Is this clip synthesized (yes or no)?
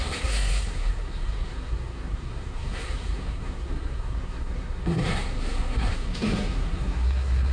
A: yes